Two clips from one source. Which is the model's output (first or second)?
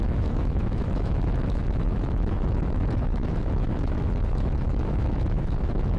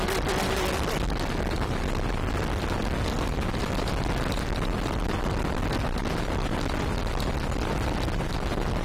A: first